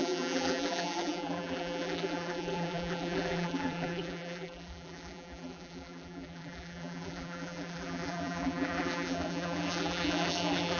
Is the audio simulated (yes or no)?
yes